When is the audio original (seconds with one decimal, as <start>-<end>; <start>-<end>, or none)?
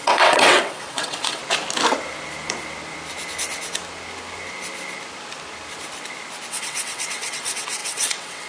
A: 1.4-6.5